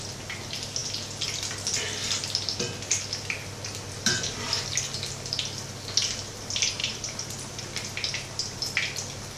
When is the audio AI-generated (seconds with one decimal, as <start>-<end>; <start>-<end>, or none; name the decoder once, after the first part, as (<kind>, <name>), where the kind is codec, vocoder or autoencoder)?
6.8-7.6 (vocoder, BigVGAN v2)